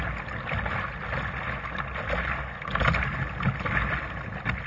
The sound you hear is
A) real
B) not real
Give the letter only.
A